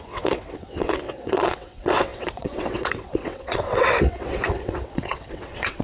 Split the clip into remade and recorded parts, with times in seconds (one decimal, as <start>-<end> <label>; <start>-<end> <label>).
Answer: 0.0-5.8 remade